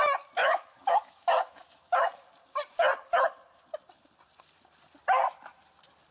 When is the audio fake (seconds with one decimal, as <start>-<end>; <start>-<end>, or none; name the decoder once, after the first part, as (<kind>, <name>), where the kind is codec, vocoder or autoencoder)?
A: 0.4-2.0 (autoencoder, DAC-VAE)